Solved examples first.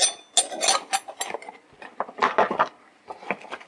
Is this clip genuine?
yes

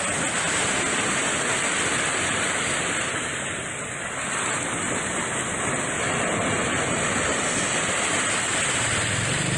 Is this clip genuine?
yes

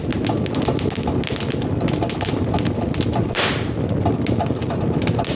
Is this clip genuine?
yes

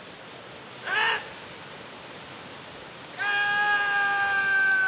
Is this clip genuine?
yes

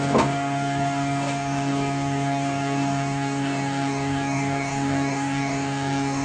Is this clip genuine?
no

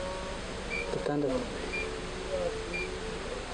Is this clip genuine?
yes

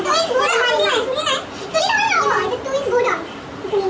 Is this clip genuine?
yes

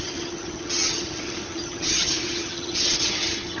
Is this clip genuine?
no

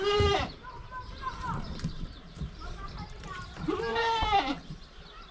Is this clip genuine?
no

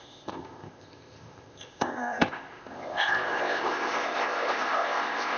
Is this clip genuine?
no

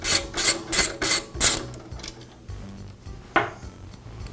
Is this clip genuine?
yes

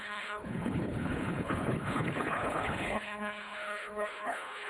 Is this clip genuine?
no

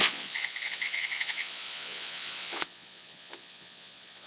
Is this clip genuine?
no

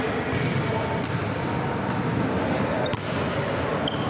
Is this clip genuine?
yes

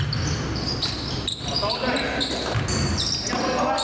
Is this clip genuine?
yes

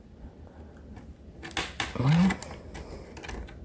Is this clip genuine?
yes